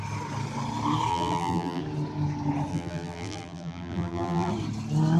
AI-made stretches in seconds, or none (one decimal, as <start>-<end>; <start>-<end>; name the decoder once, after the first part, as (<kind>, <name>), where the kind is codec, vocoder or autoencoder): 1.1-1.8 (vocoder, BigVGAN v2); 2.7-4.5